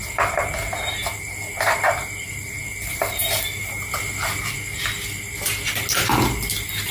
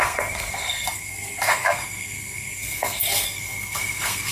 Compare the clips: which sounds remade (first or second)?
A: second